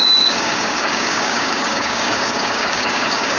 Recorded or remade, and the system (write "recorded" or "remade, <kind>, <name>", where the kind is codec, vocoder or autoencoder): remade, codec, DAC